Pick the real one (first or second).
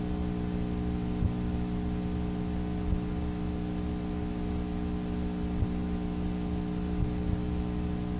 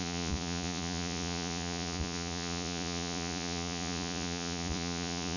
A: first